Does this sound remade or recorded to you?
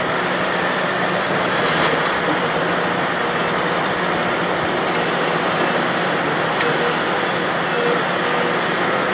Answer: recorded